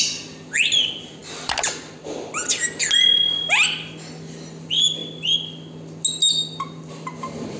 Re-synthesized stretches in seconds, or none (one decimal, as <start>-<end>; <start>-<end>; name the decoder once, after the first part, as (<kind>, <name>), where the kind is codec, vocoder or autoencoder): none